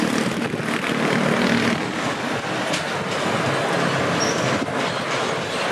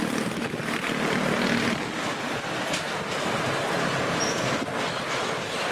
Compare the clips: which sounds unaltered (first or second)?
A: first